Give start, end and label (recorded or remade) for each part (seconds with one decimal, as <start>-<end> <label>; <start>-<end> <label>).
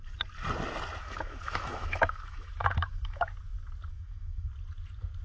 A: 0.0-1.0 recorded; 1.0-3.3 remade; 3.3-3.9 recorded; 3.9-4.5 remade; 4.5-5.2 recorded